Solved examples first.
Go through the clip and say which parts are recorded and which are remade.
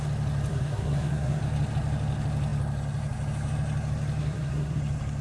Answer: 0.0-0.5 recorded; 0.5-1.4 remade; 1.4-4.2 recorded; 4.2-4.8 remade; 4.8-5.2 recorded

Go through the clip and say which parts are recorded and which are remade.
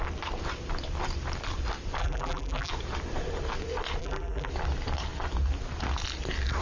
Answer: 0.0-2.0 recorded; 2.0-2.7 remade; 2.7-4.0 recorded; 4.0-4.5 remade; 4.5-6.6 recorded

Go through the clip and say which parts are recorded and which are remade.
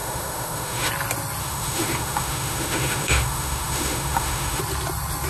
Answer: 0.0-0.9 remade; 0.9-1.4 recorded; 1.4-4.6 remade; 4.6-5.3 recorded